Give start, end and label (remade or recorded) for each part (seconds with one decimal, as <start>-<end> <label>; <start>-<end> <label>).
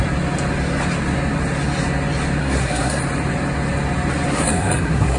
0.0-2.4 recorded; 2.4-3.0 remade; 3.0-4.3 recorded; 4.3-5.2 remade